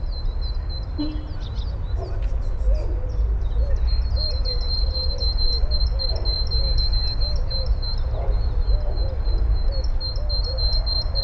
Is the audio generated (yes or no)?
no